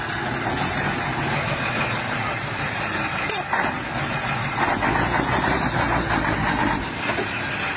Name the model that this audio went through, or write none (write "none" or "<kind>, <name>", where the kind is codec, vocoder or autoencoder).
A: none